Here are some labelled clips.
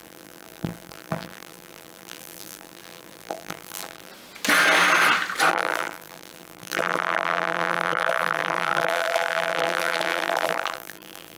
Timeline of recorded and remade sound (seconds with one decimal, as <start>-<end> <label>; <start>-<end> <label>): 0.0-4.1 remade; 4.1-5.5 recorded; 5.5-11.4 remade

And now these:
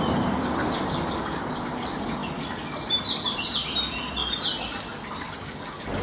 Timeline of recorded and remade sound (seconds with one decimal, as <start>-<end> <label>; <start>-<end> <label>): 0.0-4.2 remade; 4.2-5.1 recorded; 5.1-6.0 remade

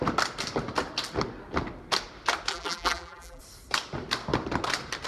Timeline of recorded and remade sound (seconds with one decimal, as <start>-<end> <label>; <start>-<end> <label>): 0.0-2.5 recorded; 2.5-3.4 remade; 3.4-5.1 recorded

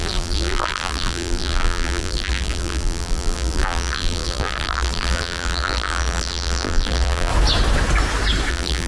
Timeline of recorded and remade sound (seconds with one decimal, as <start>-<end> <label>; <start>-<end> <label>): 0.0-7.3 remade; 7.3-8.5 recorded; 8.5-8.9 remade

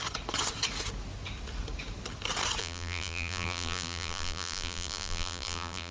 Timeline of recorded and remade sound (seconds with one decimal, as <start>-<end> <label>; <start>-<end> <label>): 0.0-2.6 recorded; 2.6-5.9 remade

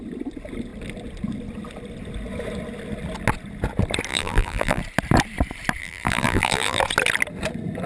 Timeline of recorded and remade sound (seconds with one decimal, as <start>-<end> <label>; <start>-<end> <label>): 0.0-4.1 recorded; 4.1-4.8 remade; 4.8-5.8 recorded; 5.8-6.8 remade; 6.8-7.9 recorded

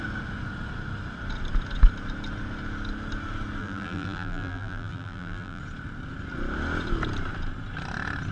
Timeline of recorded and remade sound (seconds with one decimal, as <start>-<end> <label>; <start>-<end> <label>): 0.0-3.6 recorded; 3.6-5.6 remade; 5.6-8.3 recorded

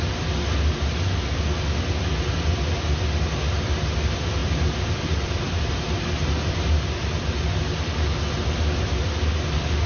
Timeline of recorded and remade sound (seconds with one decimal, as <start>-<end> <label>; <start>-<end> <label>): 0.0-4.4 recorded; 4.4-5.7 remade; 5.7-9.9 recorded